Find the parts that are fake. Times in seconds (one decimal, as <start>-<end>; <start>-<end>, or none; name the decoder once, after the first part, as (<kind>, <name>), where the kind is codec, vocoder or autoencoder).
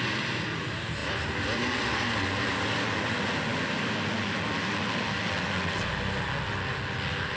none